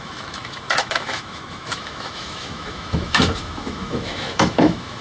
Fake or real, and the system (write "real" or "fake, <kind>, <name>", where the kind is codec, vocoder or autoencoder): fake, autoencoder, DAC-VAE